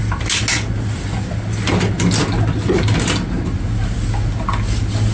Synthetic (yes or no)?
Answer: no